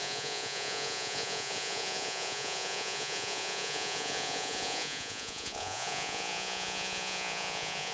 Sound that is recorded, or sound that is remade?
remade